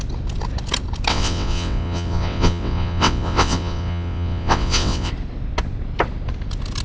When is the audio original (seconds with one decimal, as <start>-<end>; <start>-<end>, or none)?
0.0-1.1; 5.1-6.8